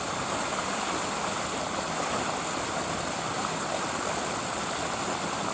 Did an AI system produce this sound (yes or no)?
no